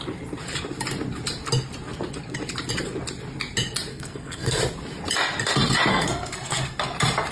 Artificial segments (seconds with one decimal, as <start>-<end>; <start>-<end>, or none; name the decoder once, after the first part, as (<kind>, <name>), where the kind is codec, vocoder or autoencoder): 3.9-4.6 (codec, SNAC); 5.9-6.8